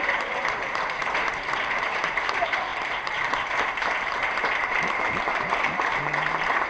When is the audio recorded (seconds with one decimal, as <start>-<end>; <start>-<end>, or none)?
none